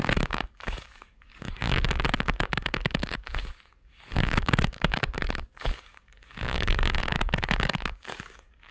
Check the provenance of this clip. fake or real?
fake